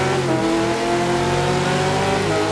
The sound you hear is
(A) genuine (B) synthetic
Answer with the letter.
A